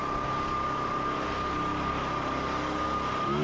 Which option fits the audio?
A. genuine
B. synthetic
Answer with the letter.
A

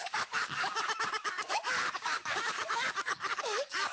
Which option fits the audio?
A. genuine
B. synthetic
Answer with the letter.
B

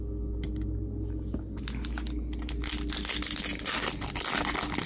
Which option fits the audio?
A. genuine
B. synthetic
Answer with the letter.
A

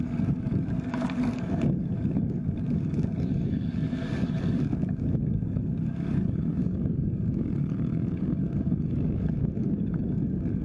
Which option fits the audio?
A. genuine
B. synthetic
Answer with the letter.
B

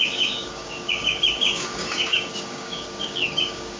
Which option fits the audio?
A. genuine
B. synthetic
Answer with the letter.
B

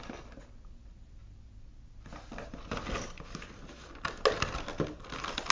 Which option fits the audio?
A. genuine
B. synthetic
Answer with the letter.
A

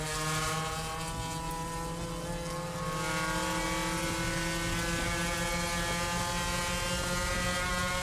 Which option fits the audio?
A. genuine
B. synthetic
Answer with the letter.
A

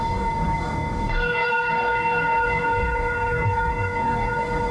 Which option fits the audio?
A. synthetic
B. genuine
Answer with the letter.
A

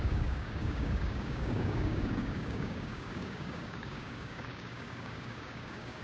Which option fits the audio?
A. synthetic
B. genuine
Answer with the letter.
A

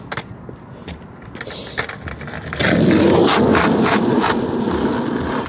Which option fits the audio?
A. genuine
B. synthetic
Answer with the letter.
A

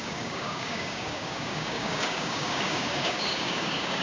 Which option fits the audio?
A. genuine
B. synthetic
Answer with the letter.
B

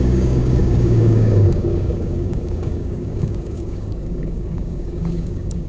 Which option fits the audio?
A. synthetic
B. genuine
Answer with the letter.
A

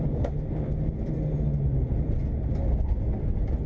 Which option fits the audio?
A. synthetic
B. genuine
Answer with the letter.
B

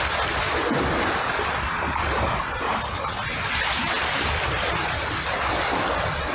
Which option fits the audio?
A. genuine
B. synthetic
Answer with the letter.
A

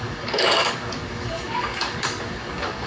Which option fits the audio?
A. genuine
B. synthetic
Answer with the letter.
B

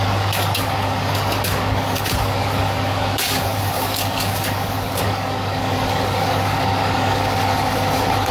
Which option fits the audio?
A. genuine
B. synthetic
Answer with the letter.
B